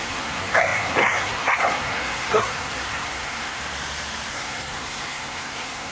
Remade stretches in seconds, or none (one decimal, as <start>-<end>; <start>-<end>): 0.0-3.6; 4.3-5.9